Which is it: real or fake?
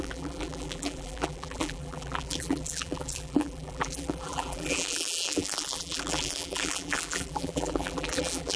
fake